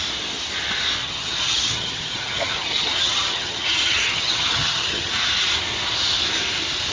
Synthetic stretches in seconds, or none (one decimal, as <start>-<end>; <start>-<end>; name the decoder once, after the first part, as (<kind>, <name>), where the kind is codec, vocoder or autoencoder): 1.0-5.1 (vocoder, HiFi-GAN)